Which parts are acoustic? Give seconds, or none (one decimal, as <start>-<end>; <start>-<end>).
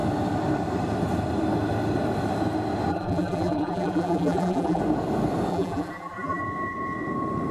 0.0-2.9; 4.8-5.5; 6.4-7.5